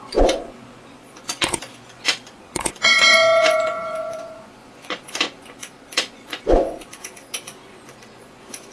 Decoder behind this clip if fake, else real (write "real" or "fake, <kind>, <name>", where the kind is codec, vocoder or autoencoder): fake, vocoder, Vocos